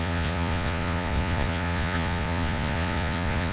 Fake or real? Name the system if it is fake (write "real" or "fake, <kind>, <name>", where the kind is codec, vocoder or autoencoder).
fake, vocoder, Vocos